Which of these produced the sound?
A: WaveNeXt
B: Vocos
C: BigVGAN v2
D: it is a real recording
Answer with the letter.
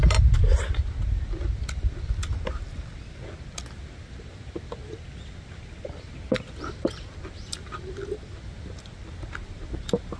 D